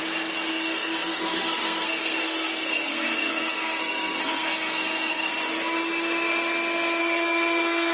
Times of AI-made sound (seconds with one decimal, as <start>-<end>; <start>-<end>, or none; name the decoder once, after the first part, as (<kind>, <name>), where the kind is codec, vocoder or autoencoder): 0.5-5.3 (codec, SNAC); 7.0-7.9

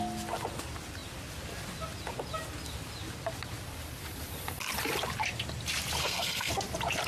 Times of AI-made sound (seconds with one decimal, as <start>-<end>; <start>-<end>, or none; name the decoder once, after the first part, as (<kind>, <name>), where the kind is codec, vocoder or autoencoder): 6.0-6.5 (codec, SNAC)